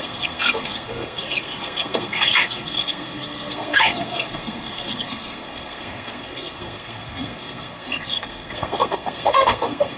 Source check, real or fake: fake